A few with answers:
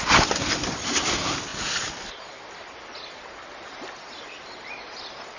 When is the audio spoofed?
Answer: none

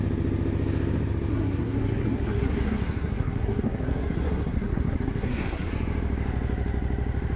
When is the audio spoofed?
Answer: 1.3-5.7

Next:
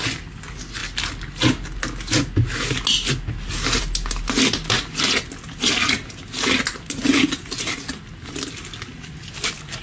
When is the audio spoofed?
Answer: none

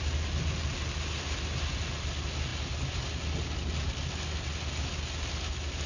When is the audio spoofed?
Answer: none

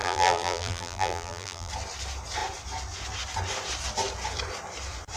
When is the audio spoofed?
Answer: 0.0-1.7

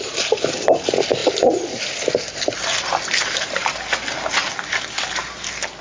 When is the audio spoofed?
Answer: none

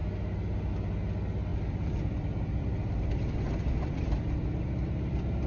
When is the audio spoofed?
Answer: 1.5-4.6